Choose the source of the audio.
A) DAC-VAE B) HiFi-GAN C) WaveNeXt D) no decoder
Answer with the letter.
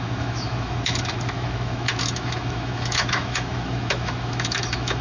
A